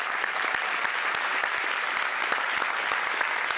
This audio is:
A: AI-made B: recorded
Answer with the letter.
B